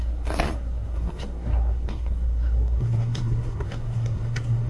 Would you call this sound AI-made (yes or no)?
yes